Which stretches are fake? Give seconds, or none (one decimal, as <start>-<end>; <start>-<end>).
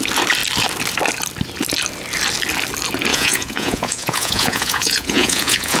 3.1-5.8